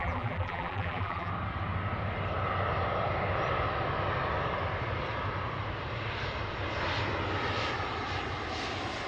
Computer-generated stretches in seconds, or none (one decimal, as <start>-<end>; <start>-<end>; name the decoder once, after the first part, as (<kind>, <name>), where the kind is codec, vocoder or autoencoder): 0.0-1.3 (vocoder, BigVGAN v2)